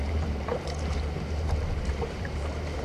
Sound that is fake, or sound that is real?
fake